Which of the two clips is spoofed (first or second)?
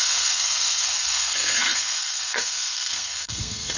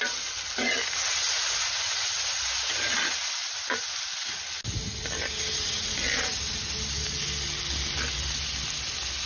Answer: first